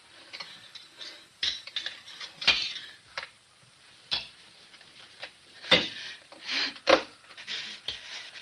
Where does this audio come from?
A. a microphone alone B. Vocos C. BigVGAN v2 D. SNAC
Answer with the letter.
C